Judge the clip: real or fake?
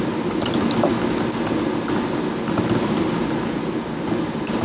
real